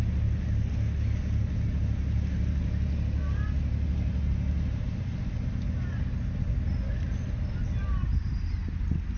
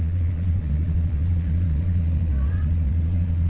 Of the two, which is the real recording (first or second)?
first